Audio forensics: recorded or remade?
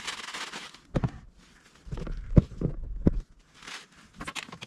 recorded